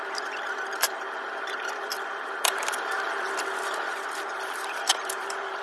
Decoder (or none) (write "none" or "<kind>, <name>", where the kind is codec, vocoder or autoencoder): vocoder, BigVGAN v2